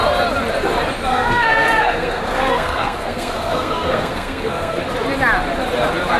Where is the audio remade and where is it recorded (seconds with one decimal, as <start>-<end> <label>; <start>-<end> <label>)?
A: 0.0-1.1 recorded; 1.1-4.8 remade; 4.8-6.2 recorded

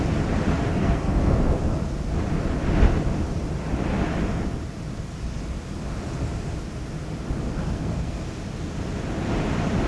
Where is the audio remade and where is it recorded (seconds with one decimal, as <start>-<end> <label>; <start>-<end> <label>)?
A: 0.0-0.8 recorded; 0.8-1.6 remade; 1.6-7.5 recorded; 7.5-8.2 remade; 8.2-9.9 recorded

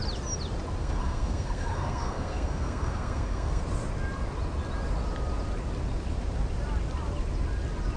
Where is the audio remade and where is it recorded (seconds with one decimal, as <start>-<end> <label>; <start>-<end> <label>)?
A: 0.0-0.8 recorded; 0.8-3.6 remade; 3.6-8.0 recorded

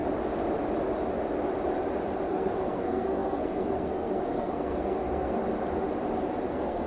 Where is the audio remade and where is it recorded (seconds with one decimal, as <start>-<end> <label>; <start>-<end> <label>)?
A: 0.0-2.3 recorded; 2.3-5.4 remade; 5.4-6.5 recorded; 6.5-6.9 remade

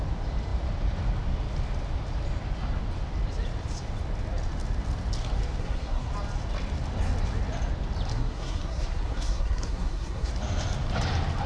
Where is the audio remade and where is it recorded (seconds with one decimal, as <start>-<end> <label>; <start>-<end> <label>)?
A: 0.0-5.6 recorded; 5.6-6.1 remade; 6.1-8.1 recorded; 8.1-10.3 remade; 10.3-11.5 recorded

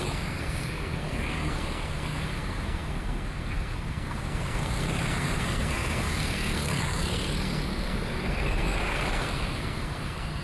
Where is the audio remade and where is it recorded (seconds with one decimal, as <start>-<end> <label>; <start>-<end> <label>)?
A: 0.0-10.4 remade

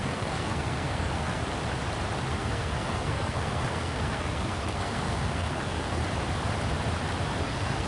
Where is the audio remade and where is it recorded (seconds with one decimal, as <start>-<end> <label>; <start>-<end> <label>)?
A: 0.0-1.4 remade; 1.4-2.3 recorded; 2.3-6.0 remade; 6.0-7.4 recorded; 7.4-7.9 remade